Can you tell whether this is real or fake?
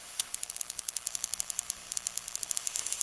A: fake